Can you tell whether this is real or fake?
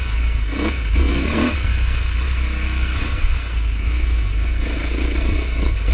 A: fake